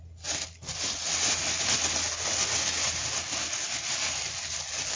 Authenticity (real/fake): real